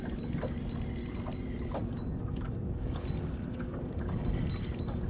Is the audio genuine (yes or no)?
yes